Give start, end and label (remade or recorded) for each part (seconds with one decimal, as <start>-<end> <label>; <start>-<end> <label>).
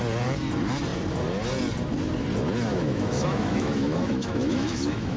0.0-2.7 recorded; 2.7-5.2 remade